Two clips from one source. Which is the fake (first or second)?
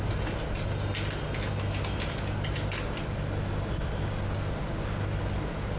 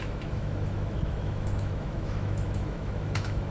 second